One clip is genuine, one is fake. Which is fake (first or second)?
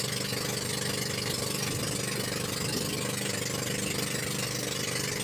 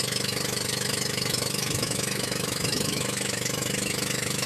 second